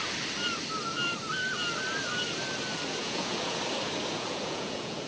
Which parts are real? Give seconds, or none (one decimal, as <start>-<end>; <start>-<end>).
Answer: 0.0-3.0; 3.6-4.1